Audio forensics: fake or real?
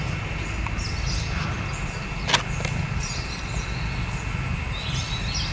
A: real